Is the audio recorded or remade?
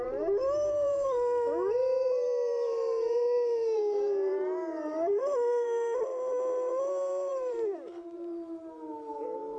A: remade